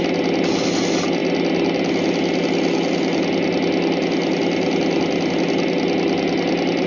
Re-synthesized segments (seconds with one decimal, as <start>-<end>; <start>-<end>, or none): none